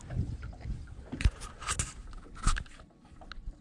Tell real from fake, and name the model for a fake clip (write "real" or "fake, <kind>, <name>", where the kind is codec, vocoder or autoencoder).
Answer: real